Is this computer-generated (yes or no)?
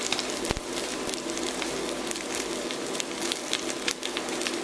yes